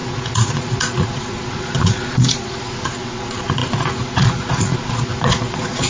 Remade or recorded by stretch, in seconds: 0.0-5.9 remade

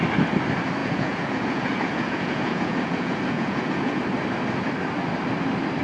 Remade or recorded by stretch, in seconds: 0.0-0.8 recorded; 0.8-4.0 remade; 4.0-5.8 recorded

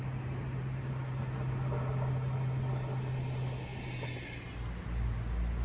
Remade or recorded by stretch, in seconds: 0.0-5.6 recorded

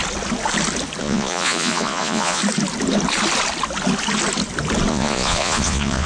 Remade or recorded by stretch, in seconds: 0.0-1.0 recorded; 1.0-2.4 remade; 2.4-4.9 recorded; 4.9-6.1 remade

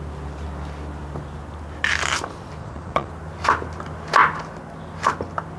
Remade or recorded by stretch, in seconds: 0.0-2.6 recorded; 2.6-3.1 remade; 3.1-5.6 recorded

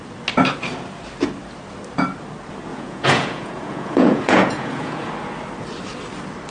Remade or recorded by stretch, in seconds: 0.0-2.7 recorded; 2.7-5.1 remade; 5.1-6.5 recorded